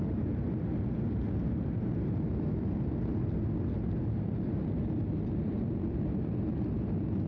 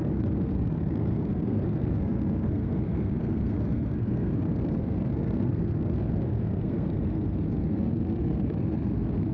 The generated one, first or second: second